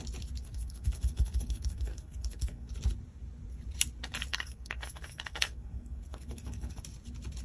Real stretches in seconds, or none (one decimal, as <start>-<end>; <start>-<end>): 0.0-0.4; 2.7-4.3; 6.8-7.4